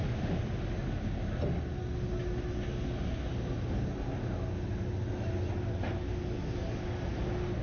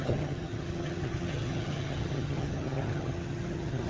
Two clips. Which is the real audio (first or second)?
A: first